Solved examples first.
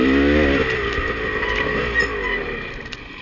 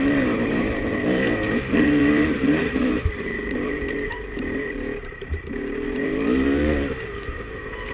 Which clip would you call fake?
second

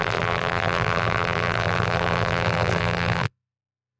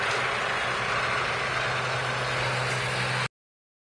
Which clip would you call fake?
first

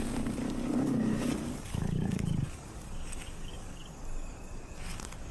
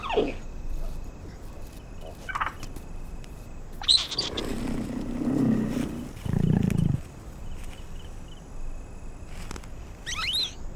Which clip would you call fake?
first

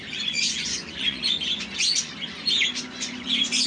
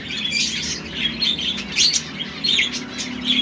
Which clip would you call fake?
first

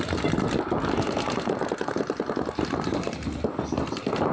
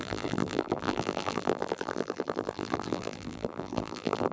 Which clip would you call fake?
second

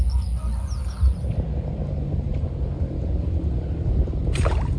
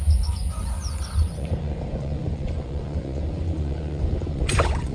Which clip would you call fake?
second